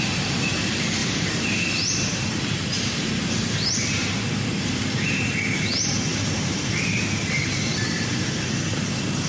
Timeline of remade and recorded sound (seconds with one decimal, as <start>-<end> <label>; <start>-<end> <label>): 0.0-1.0 recorded; 1.0-4.7 remade; 4.7-6.1 recorded; 6.1-6.7 remade; 6.7-7.7 recorded; 7.7-8.8 remade; 8.8-9.3 recorded